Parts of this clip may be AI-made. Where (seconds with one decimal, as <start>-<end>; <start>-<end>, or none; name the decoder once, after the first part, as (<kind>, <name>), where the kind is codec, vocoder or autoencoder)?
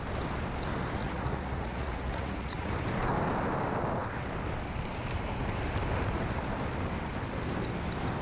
1.0-2.7 (vocoder, Vocos)